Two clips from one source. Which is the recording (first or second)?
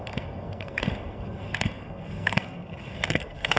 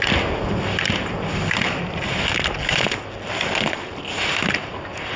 second